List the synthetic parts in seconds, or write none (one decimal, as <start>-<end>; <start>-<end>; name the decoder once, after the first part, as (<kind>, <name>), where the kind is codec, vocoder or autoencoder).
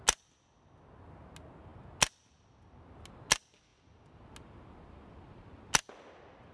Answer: none